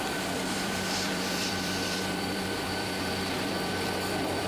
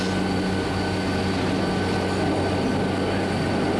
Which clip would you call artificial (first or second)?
first